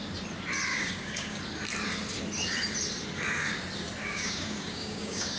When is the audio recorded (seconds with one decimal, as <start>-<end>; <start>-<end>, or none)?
0.0-0.7; 1.4-4.0